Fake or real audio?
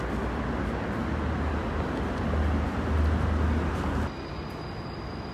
real